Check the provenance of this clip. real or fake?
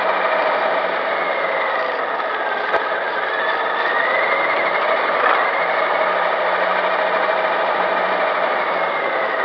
real